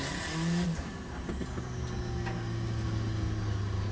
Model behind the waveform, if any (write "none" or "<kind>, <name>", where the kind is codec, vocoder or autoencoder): none